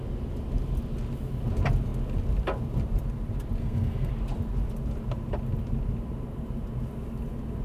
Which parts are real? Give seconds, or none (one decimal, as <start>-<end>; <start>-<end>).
0.0-3.6; 4.1-7.6